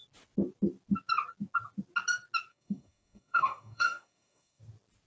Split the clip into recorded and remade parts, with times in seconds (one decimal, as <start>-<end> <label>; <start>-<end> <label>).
0.0-2.5 recorded; 2.5-4.6 remade; 4.6-5.1 recorded